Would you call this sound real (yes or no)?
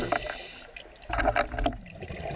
yes